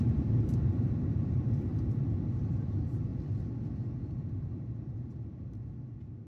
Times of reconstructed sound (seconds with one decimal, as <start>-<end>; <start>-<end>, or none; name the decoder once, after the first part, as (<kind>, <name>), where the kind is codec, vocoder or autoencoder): 0.0-3.1 (vocoder, BigVGAN v2); 4.0-5.3